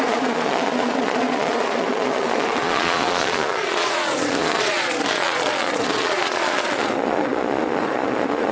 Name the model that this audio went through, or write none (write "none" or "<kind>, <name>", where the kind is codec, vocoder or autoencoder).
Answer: vocoder, Vocos